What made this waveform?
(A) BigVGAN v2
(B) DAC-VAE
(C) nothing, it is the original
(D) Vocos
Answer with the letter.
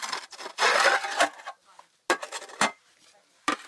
C